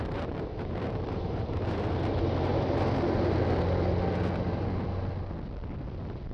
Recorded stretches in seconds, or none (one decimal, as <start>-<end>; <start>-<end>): 2.5-6.3